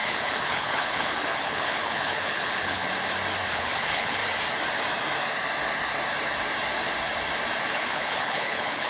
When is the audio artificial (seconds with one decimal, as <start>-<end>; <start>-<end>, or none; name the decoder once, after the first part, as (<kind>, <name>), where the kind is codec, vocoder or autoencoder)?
0.0-2.8 (codec, HILCodec); 3.5-4.2; 7.7-8.9